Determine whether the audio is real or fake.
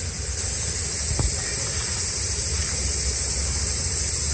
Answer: real